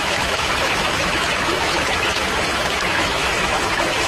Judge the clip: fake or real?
fake